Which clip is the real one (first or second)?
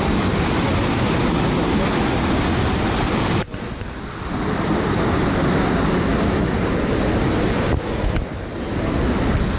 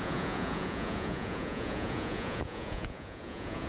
first